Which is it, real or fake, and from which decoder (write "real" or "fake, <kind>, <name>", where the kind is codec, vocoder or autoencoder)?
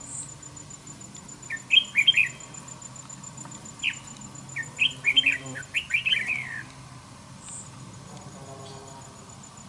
real